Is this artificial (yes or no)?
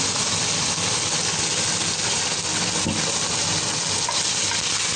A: no